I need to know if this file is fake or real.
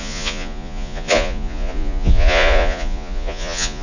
fake